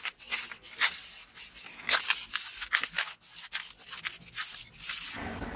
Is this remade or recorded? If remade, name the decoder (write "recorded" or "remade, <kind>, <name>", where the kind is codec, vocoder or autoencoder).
recorded